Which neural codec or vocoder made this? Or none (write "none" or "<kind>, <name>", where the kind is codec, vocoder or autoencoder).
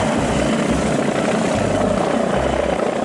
vocoder, BigVGAN v2